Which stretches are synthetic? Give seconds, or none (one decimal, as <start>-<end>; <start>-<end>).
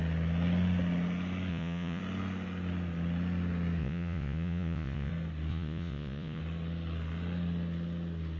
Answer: 1.5-2.0; 3.8-5.1; 5.5-6.4